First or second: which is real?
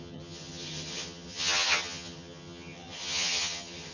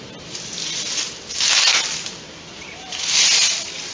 second